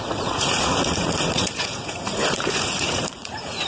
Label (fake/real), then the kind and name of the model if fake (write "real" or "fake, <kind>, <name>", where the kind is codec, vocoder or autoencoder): fake, vocoder, Vocos